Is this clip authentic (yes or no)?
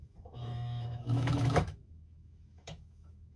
no